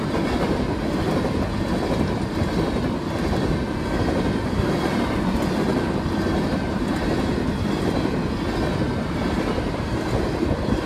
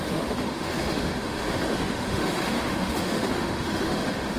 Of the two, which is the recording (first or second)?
first